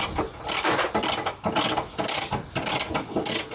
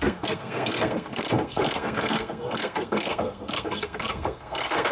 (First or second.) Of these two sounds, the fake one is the second